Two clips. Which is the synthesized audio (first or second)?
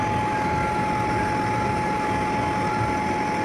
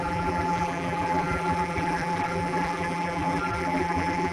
second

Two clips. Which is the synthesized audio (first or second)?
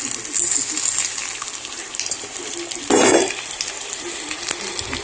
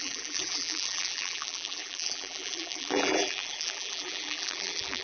second